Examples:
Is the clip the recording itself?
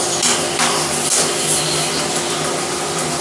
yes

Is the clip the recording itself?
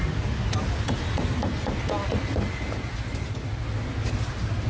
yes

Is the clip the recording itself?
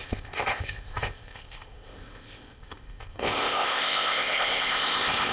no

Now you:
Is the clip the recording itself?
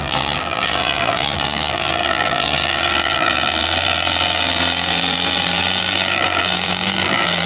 no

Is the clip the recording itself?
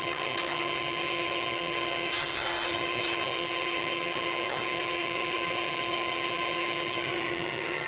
no